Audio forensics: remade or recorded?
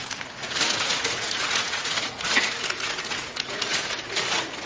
remade